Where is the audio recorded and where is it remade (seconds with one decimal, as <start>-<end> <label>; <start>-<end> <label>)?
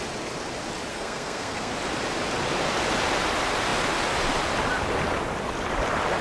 0.0-0.9 recorded; 0.9-1.7 remade; 1.7-6.2 recorded